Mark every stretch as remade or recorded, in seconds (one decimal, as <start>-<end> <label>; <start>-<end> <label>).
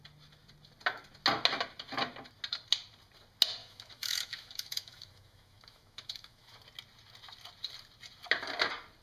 0.0-3.6 recorded; 3.6-6.6 remade; 6.6-9.0 recorded